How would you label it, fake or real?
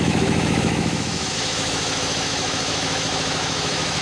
fake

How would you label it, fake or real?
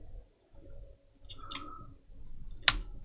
real